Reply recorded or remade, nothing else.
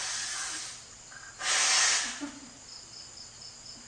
recorded